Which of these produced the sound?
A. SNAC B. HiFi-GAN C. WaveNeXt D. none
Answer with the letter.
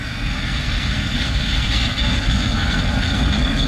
A